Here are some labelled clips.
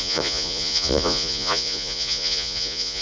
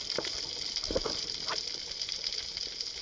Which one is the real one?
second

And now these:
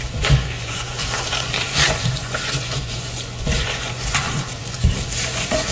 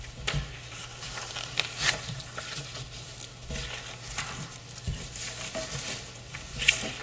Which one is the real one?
second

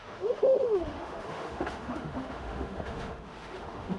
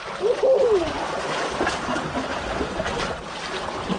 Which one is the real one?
second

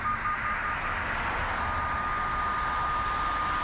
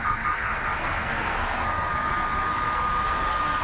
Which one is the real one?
first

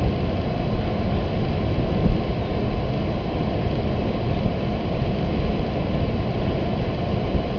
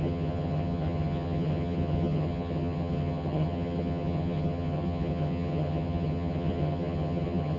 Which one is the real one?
first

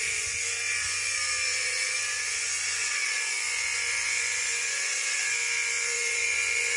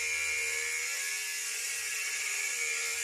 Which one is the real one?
second